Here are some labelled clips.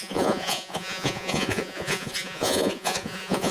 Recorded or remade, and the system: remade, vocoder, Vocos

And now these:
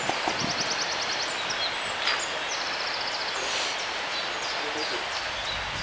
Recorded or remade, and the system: recorded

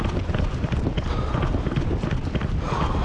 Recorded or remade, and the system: recorded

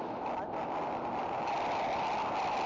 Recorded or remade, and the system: recorded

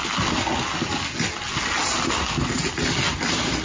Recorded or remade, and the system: recorded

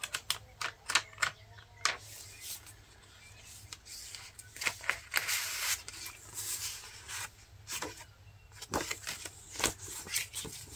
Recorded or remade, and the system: recorded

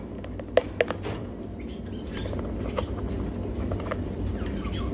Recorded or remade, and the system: recorded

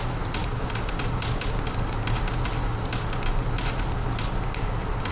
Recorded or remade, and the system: recorded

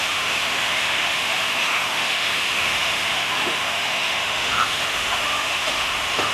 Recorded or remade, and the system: remade, autoencoder, DAC-VAE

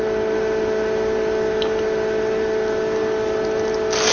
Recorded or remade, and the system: recorded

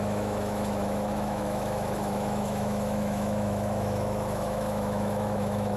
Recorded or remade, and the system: remade, autoencoder, DAC-VAE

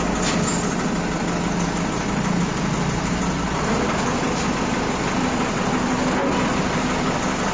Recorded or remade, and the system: recorded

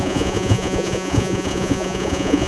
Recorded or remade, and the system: remade, vocoder, Vocos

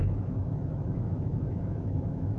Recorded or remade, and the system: remade, autoencoder, DAC-VAE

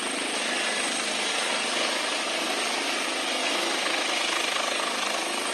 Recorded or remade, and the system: recorded